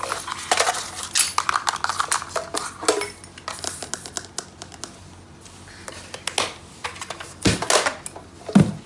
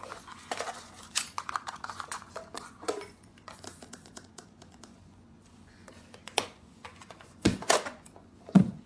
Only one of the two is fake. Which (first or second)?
second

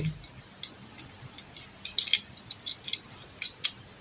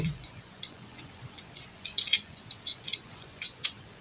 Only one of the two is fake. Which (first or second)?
second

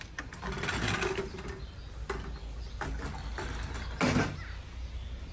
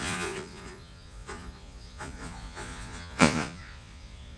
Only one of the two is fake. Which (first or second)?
second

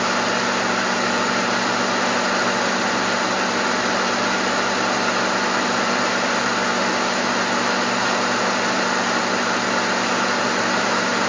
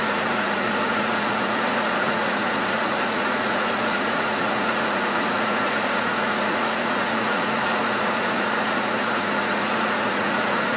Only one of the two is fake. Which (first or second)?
second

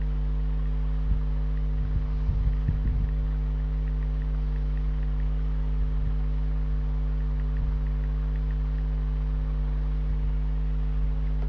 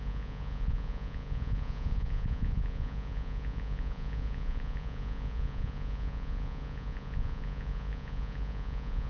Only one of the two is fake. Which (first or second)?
second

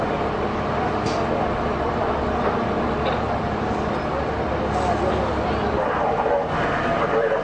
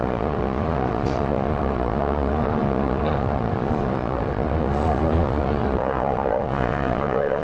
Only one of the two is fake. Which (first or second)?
second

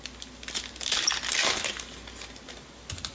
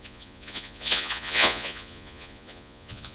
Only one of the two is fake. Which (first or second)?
second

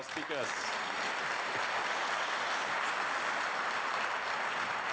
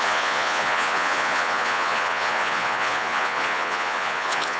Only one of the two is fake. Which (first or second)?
second